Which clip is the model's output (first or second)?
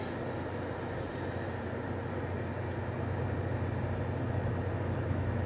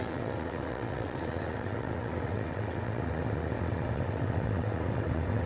second